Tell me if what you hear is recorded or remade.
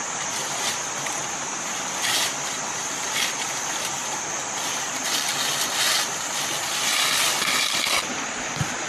recorded